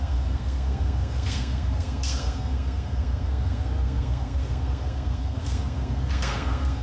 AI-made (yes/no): yes